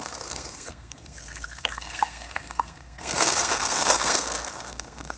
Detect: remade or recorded remade